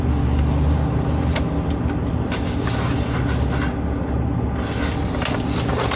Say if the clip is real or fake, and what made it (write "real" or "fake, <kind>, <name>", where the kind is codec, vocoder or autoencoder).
real